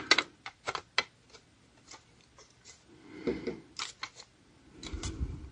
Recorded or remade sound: recorded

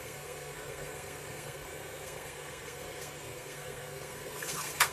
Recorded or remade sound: remade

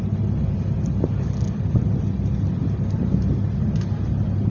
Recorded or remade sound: recorded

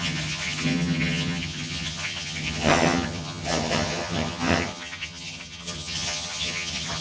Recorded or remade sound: remade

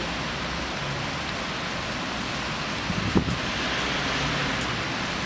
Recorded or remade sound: recorded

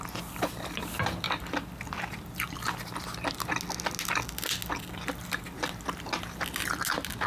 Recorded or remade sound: recorded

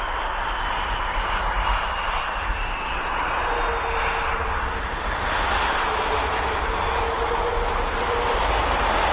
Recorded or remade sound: recorded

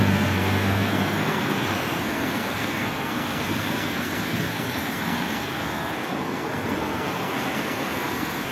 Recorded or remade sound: remade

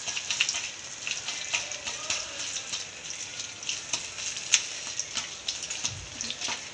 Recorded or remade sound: recorded